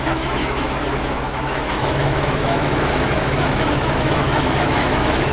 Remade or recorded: remade